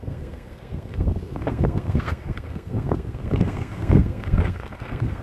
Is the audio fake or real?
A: fake